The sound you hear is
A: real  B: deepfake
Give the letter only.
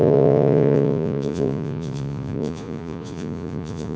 B